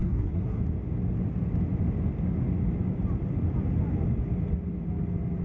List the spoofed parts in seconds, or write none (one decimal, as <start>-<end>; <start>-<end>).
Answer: 0.0-0.6